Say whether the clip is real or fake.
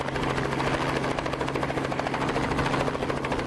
real